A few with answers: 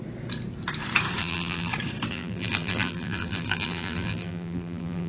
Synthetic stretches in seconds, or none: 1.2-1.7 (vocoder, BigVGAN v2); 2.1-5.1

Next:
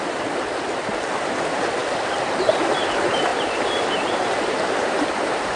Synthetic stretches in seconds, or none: 3.3-5.6 (vocoder, BigVGAN v2)

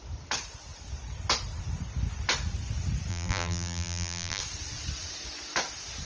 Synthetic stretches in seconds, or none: 3.1-4.4 (vocoder, BigVGAN v2)